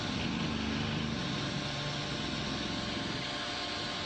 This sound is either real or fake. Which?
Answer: real